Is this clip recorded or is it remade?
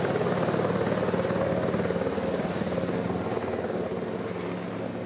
recorded